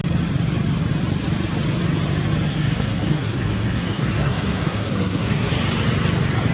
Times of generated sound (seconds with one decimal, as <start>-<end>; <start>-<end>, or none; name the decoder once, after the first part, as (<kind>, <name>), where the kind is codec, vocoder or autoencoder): 2.5-5.5 (codec, SNAC)